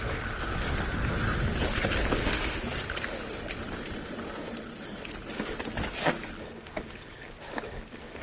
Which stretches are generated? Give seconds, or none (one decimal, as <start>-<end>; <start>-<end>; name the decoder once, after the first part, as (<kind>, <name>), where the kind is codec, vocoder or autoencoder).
2.2-2.7 (autoencoder, DAC-VAE)